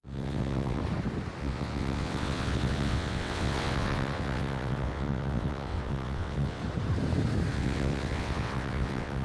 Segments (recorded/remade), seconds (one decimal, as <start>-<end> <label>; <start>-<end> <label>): 0.0-0.8 remade; 0.8-1.4 recorded; 1.4-6.6 remade; 6.6-7.5 recorded; 7.5-9.2 remade